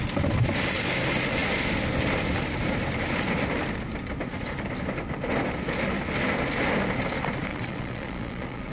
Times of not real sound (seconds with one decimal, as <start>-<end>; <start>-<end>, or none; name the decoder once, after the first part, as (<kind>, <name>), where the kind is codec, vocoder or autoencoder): 7.5-8.7 (vocoder, Vocos)